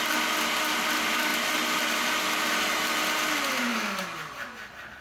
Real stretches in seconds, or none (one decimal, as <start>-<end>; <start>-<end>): 0.0-5.0